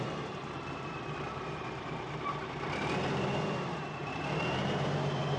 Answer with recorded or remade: remade